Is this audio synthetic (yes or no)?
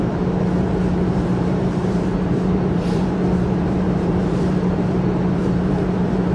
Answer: yes